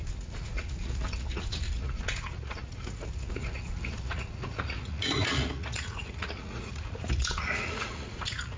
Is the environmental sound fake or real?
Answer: fake